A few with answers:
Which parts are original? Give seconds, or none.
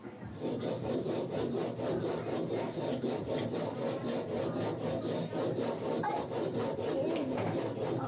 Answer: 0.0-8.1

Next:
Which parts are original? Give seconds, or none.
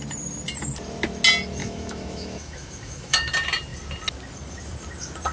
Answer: 0.0-1.6; 3.3-5.3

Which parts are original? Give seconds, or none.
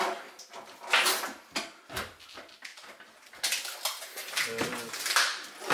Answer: 0.0-5.7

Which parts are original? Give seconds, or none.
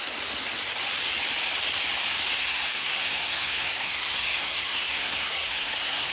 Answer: 0.0-2.4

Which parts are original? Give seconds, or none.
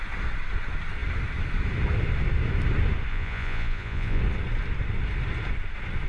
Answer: 0.0-3.1; 4.2-6.1